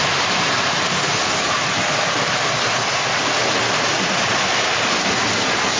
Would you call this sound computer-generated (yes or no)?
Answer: no